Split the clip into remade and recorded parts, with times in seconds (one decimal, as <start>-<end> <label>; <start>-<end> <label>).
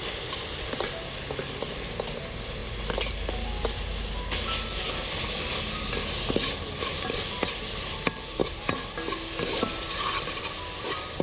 0.0-11.2 recorded